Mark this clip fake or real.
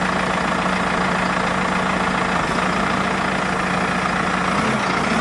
real